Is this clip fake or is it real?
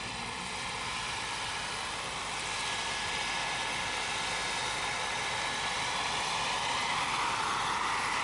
fake